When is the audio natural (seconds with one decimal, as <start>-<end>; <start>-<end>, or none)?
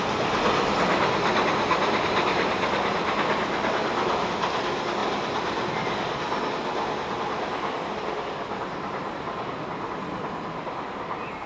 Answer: 0.0-11.5